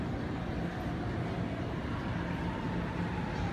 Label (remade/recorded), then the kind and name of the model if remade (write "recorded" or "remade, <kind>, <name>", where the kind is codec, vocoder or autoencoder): recorded